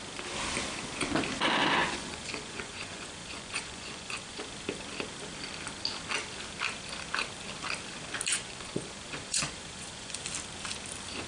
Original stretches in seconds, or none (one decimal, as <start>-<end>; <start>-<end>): 0.0-1.8; 4.4-8.3; 10.2-11.3